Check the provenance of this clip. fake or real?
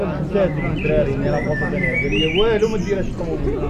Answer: real